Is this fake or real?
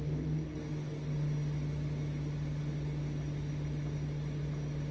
real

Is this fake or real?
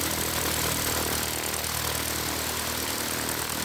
real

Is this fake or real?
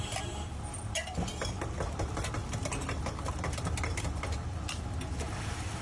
real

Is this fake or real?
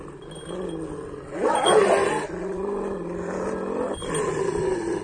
real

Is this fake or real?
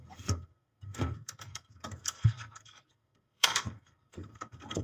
fake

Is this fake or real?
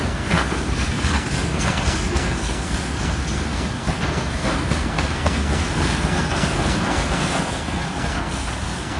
fake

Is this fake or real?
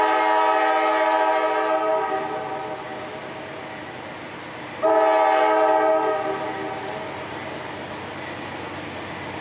real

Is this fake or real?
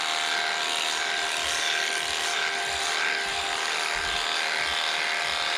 real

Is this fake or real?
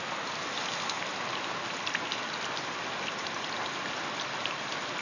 real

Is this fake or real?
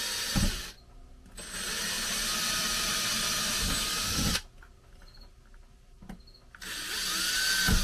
real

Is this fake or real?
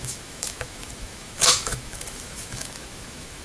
fake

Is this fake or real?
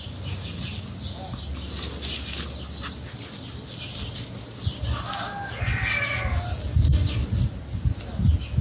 real